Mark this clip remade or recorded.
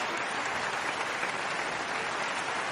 remade